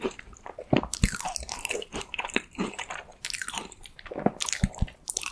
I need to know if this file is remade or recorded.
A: remade